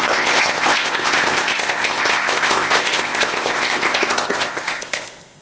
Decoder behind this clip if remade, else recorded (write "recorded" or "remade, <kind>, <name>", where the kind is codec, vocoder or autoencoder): remade, codec, ZipCodec